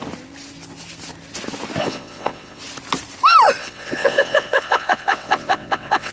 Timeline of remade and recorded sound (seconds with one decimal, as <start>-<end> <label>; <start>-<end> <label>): 0.0-1.8 recorded; 1.8-2.6 remade; 2.6-3.6 recorded; 3.6-6.1 remade